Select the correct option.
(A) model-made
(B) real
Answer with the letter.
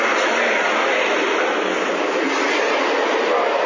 B